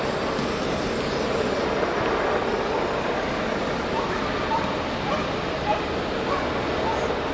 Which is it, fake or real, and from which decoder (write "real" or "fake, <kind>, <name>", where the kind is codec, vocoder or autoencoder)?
real